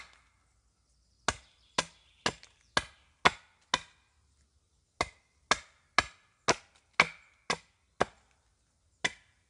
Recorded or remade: recorded